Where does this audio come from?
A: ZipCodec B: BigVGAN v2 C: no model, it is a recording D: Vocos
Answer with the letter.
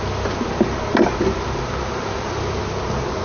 B